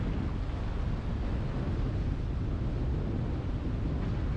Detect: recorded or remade recorded